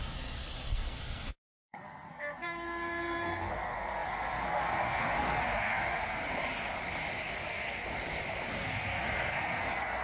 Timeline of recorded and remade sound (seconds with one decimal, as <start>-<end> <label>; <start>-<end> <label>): 0.0-6.2 remade; 6.2-7.3 recorded; 7.3-7.8 remade; 7.8-8.5 recorded; 8.5-10.0 remade